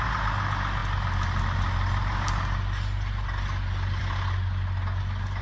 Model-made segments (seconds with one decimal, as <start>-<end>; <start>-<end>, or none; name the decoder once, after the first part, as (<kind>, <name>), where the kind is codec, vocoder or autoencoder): none